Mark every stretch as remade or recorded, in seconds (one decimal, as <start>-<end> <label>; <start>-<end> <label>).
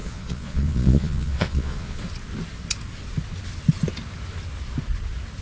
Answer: 0.0-2.0 remade; 2.0-5.4 recorded